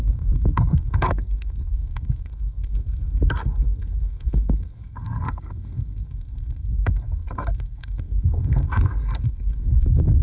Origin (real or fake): fake